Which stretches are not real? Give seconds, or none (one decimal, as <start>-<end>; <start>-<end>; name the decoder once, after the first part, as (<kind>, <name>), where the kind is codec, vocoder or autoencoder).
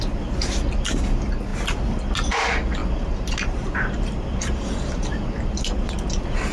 2.8-5.5 (vocoder, BigVGAN v2)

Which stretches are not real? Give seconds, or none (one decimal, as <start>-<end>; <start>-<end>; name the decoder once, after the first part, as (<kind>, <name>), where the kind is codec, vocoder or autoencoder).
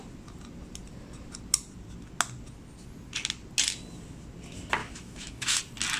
4.8-5.6 (autoencoder, DAC-VAE)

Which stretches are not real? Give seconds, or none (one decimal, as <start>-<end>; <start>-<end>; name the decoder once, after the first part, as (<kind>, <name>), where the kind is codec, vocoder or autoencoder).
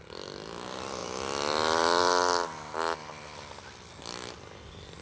none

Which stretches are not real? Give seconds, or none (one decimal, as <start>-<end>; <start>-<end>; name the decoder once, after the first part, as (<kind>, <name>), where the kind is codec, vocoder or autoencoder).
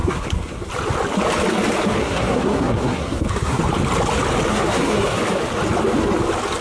0.0-0.7 (codec, SNAC); 2.0-3.6; 4.5-5.2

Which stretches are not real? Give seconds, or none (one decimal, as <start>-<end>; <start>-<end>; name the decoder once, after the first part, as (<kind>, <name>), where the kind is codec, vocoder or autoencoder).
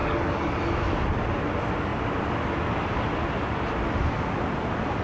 0.0-0.6 (codec, DAC)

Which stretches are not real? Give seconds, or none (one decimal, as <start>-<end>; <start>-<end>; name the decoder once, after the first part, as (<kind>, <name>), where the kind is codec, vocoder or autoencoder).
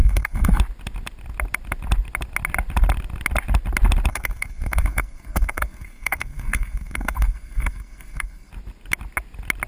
0.0-0.6 (codec, SNAC); 4.1-8.5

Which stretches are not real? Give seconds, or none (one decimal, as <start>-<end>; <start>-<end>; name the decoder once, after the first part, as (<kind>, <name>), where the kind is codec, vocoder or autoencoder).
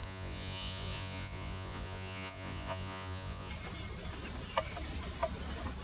0.0-3.5 (vocoder, Vocos)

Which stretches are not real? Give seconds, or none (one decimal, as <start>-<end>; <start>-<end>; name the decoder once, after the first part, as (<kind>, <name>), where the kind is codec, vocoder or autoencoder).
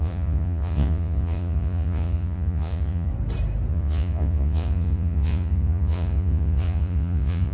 0.0-3.1 (vocoder, Vocos); 3.7-7.5